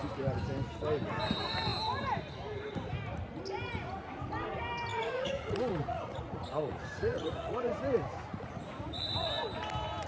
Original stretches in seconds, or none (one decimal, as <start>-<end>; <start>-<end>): 0.0-4.9; 9.3-10.1